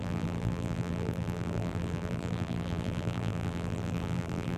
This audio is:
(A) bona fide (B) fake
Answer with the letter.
B